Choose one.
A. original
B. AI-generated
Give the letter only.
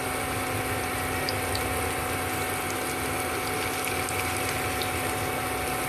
A